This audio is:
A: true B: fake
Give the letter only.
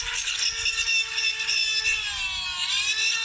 A